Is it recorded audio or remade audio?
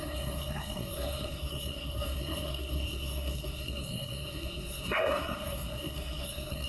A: remade